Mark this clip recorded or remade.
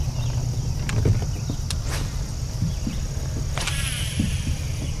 recorded